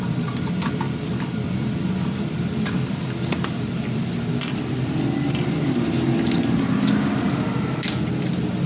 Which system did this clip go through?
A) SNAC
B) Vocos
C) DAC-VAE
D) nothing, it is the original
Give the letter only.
D